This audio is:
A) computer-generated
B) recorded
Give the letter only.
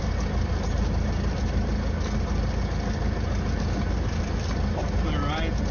B